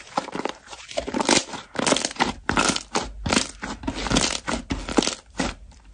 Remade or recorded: recorded